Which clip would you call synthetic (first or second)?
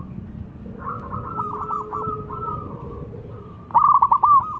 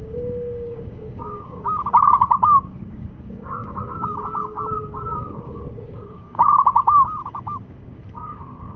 second